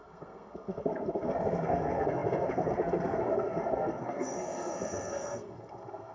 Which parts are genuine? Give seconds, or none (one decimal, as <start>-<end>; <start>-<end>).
none